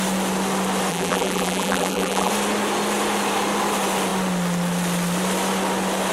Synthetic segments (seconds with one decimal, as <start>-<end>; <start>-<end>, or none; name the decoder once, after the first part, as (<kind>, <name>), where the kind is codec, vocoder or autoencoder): 0.9-2.3 (vocoder, BigVGAN v2)

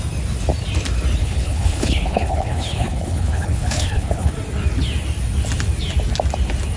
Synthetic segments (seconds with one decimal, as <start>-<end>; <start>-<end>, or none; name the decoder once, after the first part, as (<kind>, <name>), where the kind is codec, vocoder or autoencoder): 1.2-4.3 (codec, HILCodec)

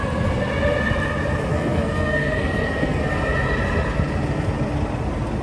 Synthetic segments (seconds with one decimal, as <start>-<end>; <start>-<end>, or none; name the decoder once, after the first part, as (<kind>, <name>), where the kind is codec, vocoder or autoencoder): 1.5-3.0 (codec, SNAC)

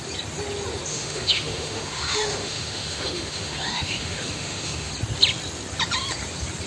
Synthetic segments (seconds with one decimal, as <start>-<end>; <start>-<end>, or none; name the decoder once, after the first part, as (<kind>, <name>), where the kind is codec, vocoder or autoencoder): 0.9-4.9 (autoencoder, DAC-VAE)